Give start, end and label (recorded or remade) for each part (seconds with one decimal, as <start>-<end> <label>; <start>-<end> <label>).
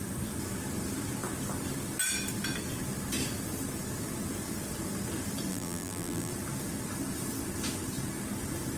0.0-5.5 recorded; 5.5-6.3 remade; 6.3-8.8 recorded